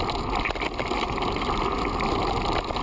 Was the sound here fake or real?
real